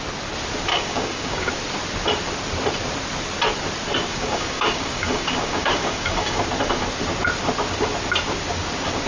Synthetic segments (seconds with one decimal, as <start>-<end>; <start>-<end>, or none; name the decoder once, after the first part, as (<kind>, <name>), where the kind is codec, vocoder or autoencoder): 0.7-1.5 (codec, DAC); 4.1-6.4

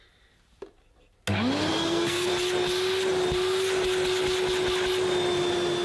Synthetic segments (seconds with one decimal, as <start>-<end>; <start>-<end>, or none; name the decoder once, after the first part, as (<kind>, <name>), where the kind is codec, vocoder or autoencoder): 1.7-2.3 (codec, SNAC)